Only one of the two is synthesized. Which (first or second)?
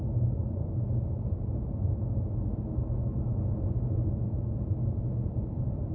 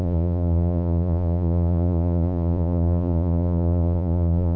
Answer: second